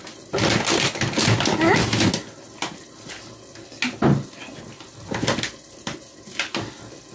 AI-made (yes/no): no